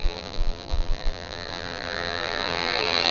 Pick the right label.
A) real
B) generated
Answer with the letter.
B